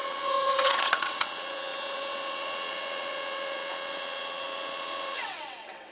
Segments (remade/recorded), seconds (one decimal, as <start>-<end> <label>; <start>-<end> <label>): 0.0-5.9 remade